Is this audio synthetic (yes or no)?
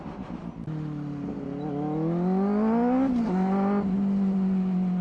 no